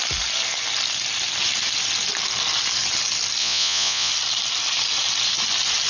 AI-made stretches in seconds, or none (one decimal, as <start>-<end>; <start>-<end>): 3.4-4.1